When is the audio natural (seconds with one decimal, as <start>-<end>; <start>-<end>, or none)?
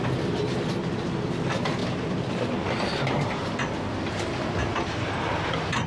0.0-5.9